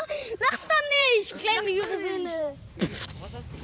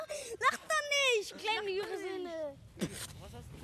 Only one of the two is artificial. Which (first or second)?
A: first